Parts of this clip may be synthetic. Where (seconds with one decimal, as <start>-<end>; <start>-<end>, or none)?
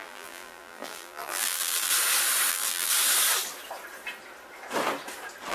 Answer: 0.0-1.9; 2.5-2.9